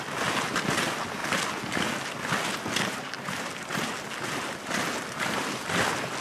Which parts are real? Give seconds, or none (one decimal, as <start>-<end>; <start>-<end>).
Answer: 0.0-6.2